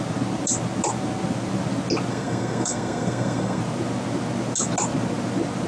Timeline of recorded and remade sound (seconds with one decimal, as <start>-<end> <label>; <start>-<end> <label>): 0.0-2.1 recorded; 2.1-3.6 remade; 3.6-5.7 recorded